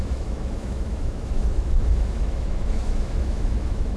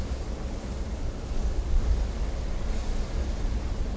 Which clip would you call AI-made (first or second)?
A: first